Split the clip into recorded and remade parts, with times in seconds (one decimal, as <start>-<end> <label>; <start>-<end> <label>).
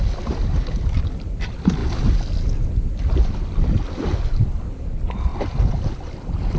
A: 0.0-1.8 remade; 1.8-3.2 recorded; 3.2-5.3 remade; 5.3-6.6 recorded